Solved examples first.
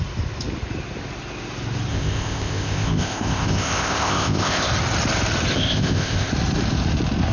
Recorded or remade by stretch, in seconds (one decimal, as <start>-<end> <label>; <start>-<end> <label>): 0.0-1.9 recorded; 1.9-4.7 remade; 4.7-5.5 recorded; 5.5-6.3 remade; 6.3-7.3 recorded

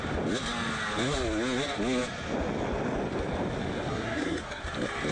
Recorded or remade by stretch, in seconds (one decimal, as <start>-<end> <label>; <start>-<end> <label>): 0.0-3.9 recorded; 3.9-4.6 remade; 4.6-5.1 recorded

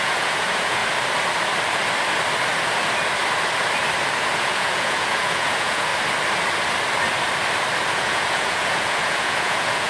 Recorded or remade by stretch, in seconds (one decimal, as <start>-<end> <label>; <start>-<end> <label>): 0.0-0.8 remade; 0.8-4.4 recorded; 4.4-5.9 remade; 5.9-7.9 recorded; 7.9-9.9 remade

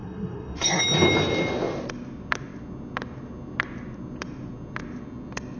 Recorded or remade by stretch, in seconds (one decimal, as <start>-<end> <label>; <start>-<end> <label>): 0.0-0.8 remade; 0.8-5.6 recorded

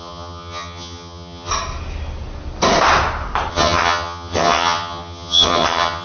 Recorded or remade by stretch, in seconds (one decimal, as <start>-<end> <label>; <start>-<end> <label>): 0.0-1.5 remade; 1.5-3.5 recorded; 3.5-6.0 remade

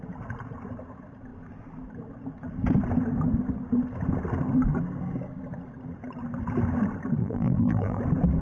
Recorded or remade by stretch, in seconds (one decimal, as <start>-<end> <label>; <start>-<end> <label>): 0.0-7.2 recorded; 7.2-8.0 remade; 8.0-8.4 recorded

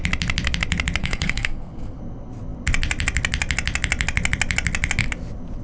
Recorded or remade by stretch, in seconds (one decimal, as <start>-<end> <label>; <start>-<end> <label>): 0.0-1.0 recorded; 1.0-2.0 remade; 2.0-5.6 recorded

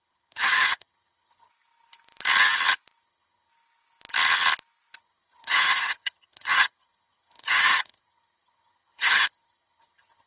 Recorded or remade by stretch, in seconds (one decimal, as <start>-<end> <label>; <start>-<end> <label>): 0.0-1.5 remade; 1.5-3.0 recorded; 3.0-3.5 remade; 3.5-5.0 recorded; 5.0-10.3 remade